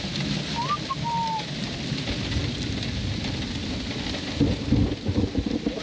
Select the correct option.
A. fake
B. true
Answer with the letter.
B